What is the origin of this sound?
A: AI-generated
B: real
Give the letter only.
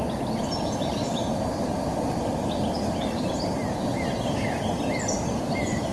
B